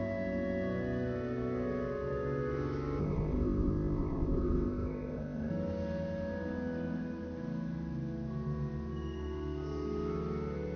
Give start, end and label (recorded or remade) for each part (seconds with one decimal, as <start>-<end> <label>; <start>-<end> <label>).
0.0-3.0 recorded; 3.0-5.5 remade; 5.5-10.8 recorded